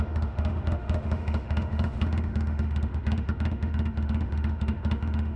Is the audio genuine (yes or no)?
no